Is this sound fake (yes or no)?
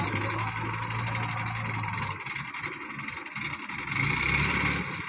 no